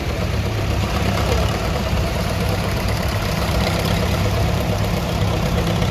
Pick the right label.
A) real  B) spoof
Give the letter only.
B